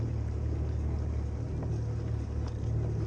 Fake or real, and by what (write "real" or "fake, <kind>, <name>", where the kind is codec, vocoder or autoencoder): real